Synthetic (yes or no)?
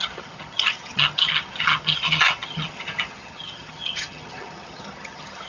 yes